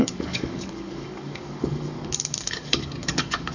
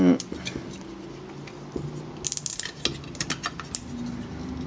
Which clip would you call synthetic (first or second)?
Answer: first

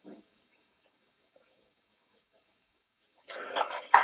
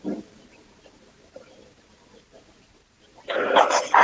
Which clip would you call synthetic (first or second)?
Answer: first